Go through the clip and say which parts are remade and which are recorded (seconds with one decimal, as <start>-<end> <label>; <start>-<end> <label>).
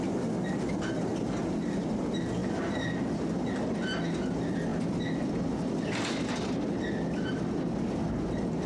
0.0-2.4 recorded; 2.4-4.0 remade; 4.0-4.7 recorded; 4.7-6.7 remade; 6.7-8.7 recorded